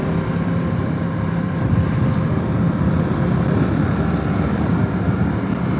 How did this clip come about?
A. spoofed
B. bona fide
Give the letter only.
A